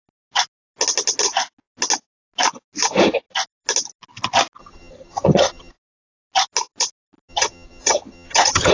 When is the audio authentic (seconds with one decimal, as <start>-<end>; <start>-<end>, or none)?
0.0-4.6; 5.7-7.3